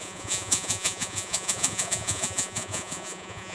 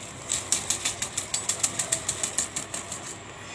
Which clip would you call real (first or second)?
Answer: second